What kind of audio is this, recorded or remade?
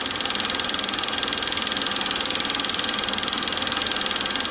recorded